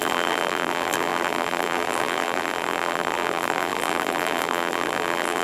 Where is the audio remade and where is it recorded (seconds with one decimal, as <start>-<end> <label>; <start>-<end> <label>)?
0.0-5.4 remade

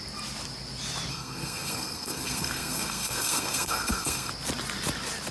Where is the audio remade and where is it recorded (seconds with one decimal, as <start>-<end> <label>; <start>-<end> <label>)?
0.0-1.1 recorded; 1.1-4.3 remade; 4.3-5.3 recorded

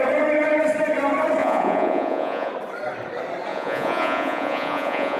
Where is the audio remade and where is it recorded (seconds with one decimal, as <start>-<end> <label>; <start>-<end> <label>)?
0.0-1.4 recorded; 1.4-2.5 remade; 2.5-3.5 recorded; 3.5-5.2 remade